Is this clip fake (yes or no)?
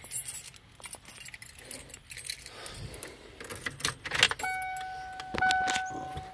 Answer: no